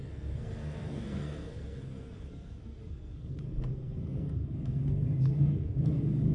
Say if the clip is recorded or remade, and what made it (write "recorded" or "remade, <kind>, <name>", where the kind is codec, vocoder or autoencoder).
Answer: remade, codec, SNAC